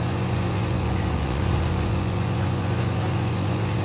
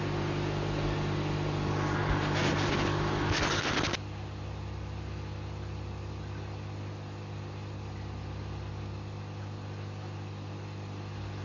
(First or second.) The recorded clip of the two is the second